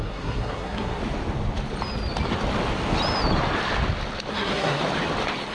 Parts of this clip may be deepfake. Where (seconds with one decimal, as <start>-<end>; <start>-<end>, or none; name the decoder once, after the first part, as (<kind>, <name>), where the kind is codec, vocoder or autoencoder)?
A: 0.0-1.0 (codec, SNAC); 4.3-4.8